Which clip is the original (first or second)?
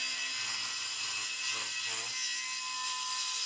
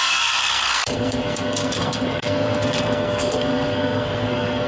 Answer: first